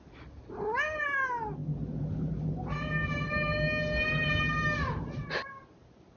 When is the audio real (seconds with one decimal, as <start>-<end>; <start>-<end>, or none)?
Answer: 0.0-6.2